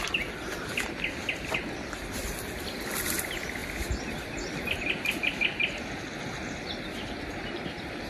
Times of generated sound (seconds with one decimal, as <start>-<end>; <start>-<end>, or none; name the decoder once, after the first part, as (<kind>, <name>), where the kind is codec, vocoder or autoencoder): none